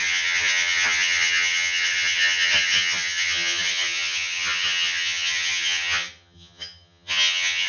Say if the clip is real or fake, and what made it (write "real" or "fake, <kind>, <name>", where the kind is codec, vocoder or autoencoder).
fake, vocoder, HiFi-GAN